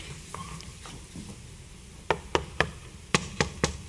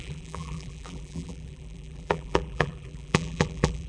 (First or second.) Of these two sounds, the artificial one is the second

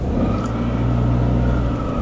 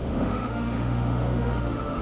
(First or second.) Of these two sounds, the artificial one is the second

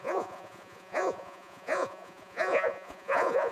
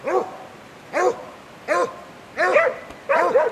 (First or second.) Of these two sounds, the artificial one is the first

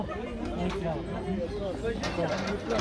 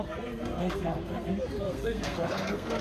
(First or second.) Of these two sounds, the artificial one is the second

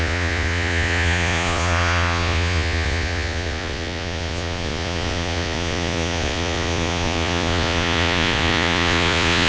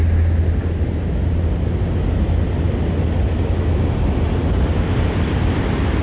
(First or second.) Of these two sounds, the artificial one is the first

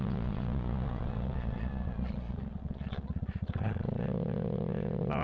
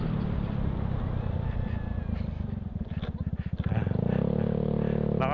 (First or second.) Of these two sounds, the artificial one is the first